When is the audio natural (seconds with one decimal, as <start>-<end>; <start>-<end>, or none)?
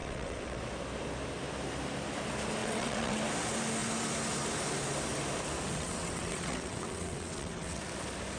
0.6-2.6; 3.2-5.7; 7.8-8.4